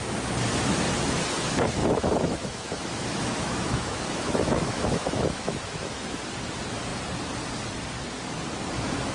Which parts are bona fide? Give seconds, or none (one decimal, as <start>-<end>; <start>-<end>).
0.0-1.8; 6.2-9.1